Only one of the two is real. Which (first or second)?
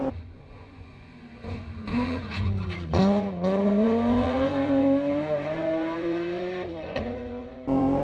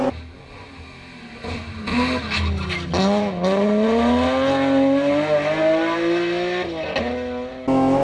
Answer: second